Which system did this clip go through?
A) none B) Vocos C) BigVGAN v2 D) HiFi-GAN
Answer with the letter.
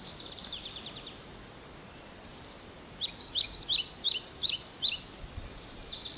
C